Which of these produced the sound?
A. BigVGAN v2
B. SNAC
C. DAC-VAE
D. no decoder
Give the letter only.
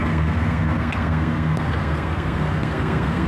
B